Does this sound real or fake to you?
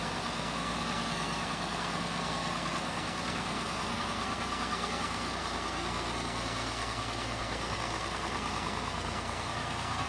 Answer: fake